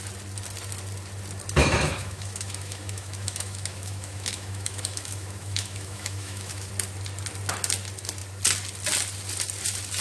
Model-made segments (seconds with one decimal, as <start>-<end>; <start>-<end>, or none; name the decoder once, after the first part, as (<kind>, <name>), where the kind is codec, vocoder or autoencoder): 1.6-6.7 (autoencoder, DAC-VAE)